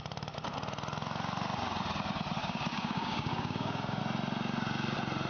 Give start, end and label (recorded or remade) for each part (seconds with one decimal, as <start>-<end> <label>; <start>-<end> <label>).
0.0-2.4 recorded; 2.4-4.0 remade; 4.0-5.3 recorded